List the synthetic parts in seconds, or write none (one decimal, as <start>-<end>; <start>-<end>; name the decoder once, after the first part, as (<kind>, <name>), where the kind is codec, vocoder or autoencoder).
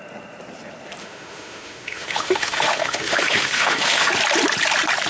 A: 1.0-4.1 (autoencoder, DAC-VAE)